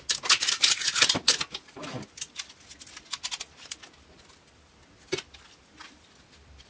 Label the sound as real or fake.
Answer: real